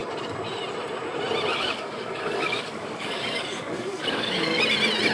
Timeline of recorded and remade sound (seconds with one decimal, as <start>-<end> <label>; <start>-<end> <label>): 0.0-1.5 recorded; 1.5-4.6 remade; 4.6-5.1 recorded